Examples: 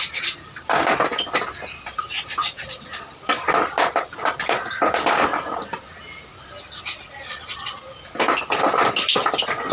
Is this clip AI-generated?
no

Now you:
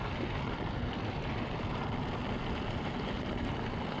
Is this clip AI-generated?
no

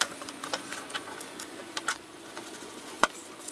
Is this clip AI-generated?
yes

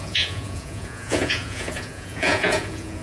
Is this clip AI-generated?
yes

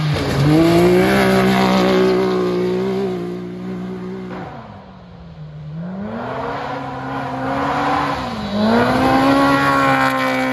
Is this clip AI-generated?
no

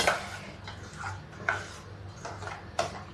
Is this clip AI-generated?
no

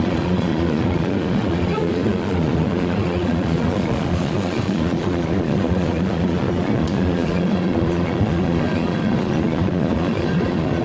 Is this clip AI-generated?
yes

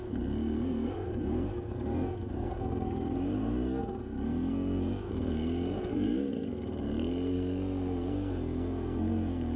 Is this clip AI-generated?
yes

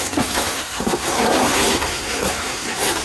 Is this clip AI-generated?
yes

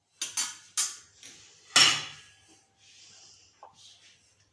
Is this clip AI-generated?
no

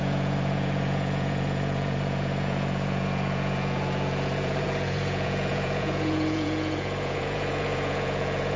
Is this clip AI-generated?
yes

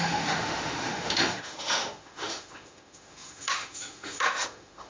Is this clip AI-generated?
yes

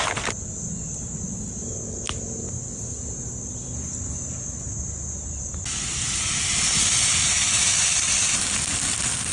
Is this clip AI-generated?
no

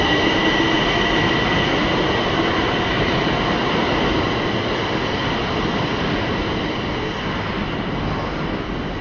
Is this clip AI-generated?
no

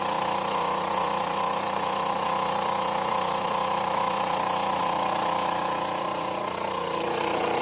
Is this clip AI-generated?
yes